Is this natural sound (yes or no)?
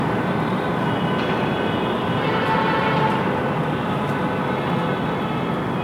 yes